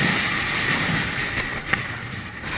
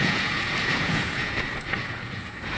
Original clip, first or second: first